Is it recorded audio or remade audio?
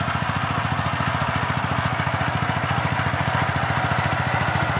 recorded